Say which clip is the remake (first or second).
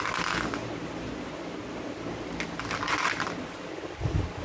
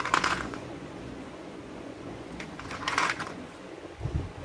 second